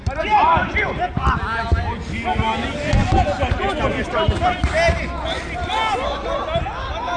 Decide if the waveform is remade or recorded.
recorded